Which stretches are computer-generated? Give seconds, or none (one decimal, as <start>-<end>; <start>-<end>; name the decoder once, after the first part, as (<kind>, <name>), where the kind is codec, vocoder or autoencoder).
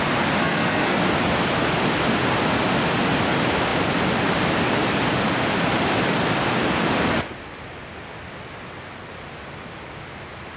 0.4-1.0 (codec, SNAC)